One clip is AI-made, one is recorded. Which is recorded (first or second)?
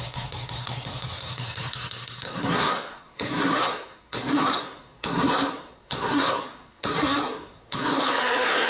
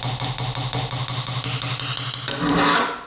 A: second